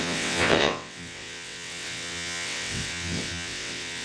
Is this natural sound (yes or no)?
no